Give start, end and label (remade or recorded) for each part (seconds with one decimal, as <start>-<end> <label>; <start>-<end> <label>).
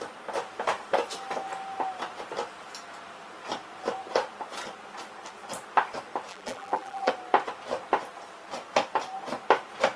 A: 0.0-6.3 recorded; 6.3-7.1 remade; 7.1-10.0 recorded